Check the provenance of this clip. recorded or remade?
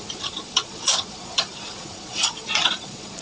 remade